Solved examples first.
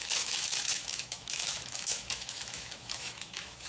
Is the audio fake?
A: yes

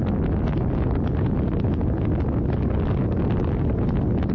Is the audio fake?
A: no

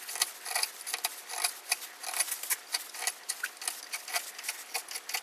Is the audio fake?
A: no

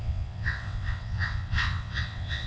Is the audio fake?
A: yes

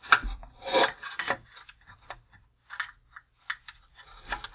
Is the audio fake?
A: no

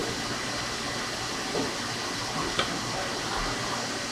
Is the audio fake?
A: no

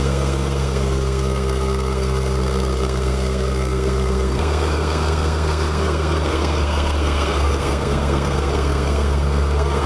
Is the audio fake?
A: yes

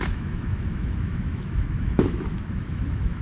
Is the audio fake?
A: yes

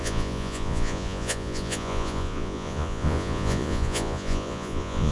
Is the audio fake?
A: yes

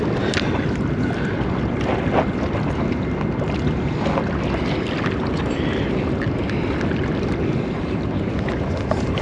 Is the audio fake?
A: no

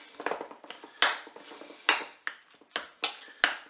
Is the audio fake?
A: no